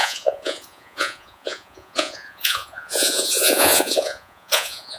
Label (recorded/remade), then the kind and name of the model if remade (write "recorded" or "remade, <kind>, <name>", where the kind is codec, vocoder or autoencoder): remade, vocoder, Vocos